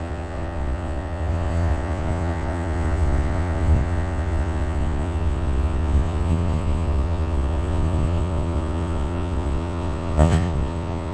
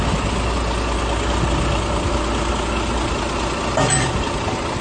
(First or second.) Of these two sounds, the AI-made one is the first